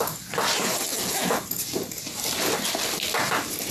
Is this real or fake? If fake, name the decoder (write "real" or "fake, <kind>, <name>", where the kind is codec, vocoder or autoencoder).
real